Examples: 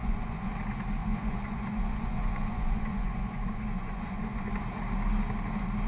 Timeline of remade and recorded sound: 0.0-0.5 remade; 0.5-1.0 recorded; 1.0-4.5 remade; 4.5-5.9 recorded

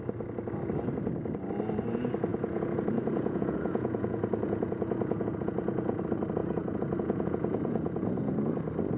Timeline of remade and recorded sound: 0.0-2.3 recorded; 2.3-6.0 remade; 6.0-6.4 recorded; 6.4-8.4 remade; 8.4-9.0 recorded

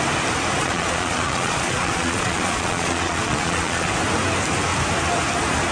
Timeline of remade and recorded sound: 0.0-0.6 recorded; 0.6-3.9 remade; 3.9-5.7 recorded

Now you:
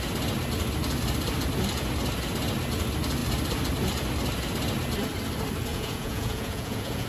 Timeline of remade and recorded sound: 0.0-5.7 recorded; 5.7-7.1 remade

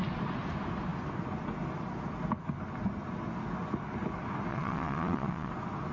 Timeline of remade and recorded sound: 0.0-4.5 recorded; 4.5-5.5 remade; 5.5-5.9 recorded